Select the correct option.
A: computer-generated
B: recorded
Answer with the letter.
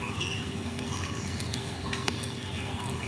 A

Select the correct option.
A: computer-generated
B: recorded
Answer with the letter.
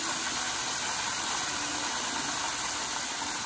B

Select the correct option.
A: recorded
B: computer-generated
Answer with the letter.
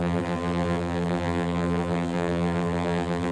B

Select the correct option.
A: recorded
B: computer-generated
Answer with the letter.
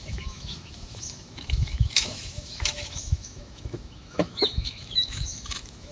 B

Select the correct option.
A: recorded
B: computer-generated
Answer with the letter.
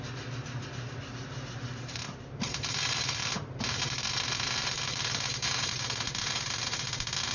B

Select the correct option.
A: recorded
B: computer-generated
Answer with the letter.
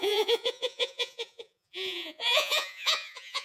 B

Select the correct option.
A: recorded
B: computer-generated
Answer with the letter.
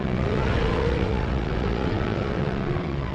B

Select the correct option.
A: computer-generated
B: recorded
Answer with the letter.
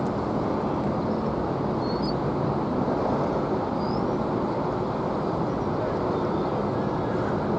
B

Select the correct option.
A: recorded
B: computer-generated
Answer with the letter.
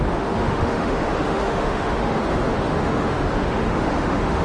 B